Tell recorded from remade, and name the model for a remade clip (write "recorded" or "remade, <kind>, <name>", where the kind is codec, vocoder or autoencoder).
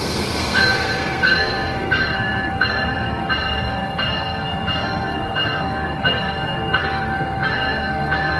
remade, codec, SNAC